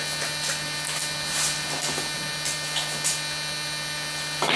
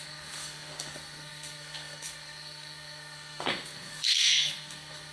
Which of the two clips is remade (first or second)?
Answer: second